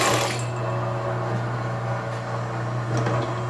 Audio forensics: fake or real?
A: real